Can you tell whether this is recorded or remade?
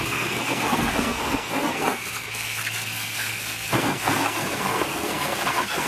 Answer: remade